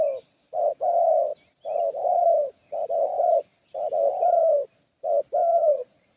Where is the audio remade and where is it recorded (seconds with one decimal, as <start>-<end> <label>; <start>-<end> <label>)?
0.0-5.5 recorded; 5.5-6.2 remade